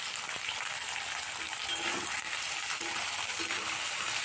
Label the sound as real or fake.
fake